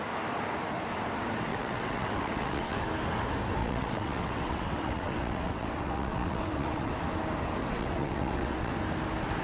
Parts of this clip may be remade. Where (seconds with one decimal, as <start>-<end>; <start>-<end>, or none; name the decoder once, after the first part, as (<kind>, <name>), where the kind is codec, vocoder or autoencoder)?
1.5-2.8 (vocoder, WaveNeXt); 3.6-6.9; 7.6-8.7